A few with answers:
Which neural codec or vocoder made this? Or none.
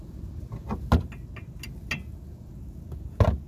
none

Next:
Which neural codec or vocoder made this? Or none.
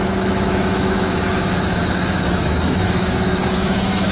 autoencoder, DAC-VAE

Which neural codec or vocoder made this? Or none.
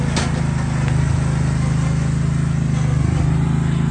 none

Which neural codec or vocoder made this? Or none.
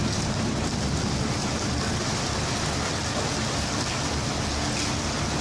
none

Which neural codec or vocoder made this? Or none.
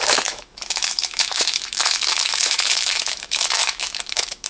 autoencoder, DAC-VAE